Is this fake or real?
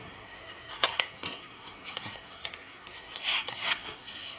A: fake